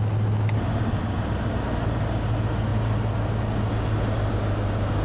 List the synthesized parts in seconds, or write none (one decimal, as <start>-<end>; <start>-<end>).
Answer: none